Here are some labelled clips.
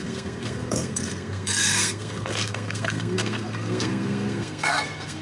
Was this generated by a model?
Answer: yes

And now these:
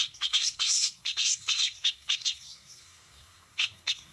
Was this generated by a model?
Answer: yes